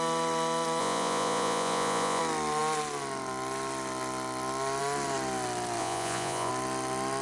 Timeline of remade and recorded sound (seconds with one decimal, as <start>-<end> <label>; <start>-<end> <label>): 0.0-0.8 recorded; 0.8-2.2 remade; 2.2-5.8 recorded; 5.8-6.5 remade; 6.5-7.2 recorded